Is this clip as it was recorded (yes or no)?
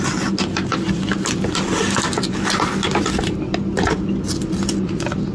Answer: yes